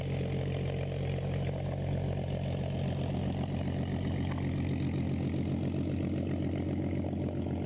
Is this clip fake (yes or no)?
no